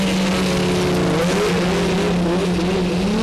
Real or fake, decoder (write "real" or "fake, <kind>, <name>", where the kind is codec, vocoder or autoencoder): real